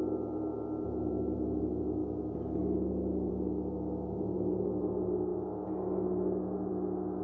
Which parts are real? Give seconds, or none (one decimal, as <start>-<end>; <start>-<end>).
0.0-7.2